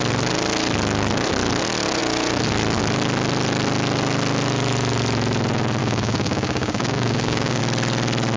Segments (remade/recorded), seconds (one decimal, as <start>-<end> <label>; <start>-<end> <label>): 0.0-5.8 recorded; 5.8-7.6 remade; 7.6-8.4 recorded